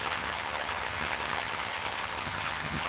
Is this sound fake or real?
fake